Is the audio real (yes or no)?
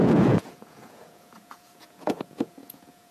no